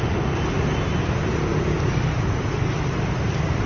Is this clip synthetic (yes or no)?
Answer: no